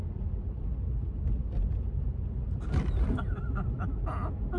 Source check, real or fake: real